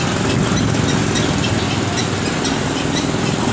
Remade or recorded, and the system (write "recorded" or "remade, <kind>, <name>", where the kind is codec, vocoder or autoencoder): recorded